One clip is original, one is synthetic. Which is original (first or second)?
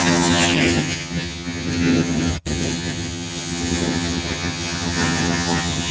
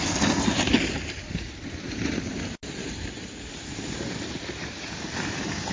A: second